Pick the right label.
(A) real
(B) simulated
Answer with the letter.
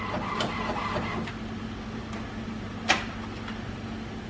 A